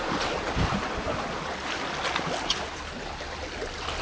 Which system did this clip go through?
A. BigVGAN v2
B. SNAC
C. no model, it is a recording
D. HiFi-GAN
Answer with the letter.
C